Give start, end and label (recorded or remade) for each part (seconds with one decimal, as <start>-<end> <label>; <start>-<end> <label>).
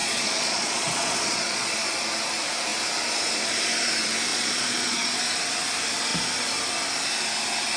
0.0-1.7 remade; 1.7-4.3 recorded; 4.3-5.2 remade; 5.2-7.8 recorded